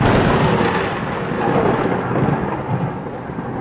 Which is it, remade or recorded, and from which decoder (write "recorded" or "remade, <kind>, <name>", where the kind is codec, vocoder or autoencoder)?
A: recorded